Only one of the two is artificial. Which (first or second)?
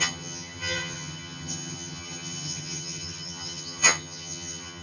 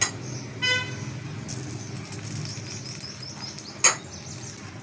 first